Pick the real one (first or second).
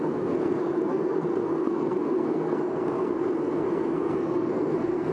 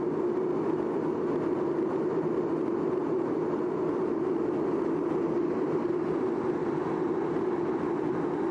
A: second